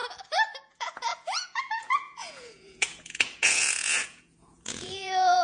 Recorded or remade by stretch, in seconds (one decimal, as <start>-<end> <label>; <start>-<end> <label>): 0.0-0.6 recorded; 0.6-5.4 remade